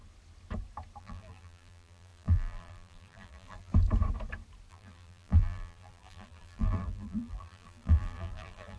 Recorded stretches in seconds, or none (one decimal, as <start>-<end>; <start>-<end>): 0.0-1.0; 3.7-4.7